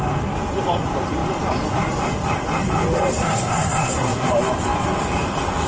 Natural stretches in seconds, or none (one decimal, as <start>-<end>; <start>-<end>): 0.0-3.2; 4.3-5.7